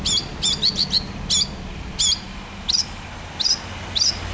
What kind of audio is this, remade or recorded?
recorded